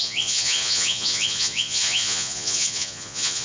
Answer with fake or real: fake